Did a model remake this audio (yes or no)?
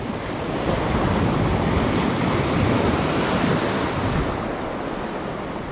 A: no